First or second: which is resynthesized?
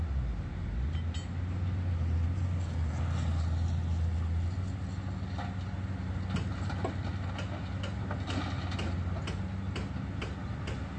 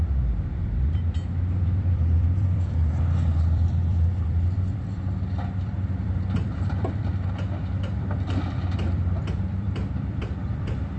second